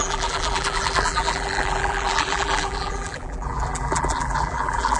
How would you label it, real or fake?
fake